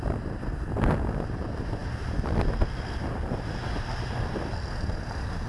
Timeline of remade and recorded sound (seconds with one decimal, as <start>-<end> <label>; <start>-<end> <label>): 0.0-5.5 recorded